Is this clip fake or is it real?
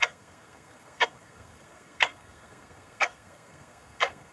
fake